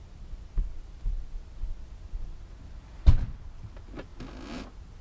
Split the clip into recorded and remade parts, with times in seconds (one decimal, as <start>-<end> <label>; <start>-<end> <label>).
0.0-5.0 recorded